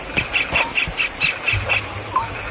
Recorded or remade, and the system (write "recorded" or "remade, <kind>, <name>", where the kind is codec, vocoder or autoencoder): recorded